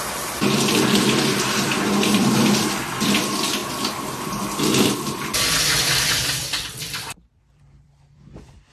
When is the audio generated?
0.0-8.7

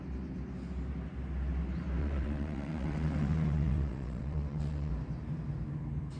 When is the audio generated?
2.0-4.9

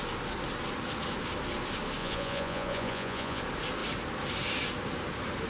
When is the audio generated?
2.0-3.4

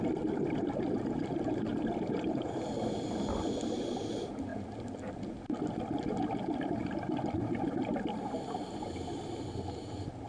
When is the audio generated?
1.7-3.0; 4.5-5.2

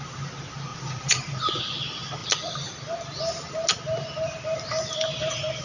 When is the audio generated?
0.7-1.6

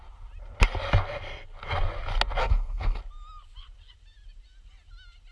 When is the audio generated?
2.4-3.0